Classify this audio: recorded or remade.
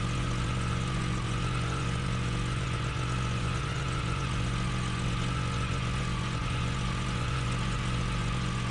remade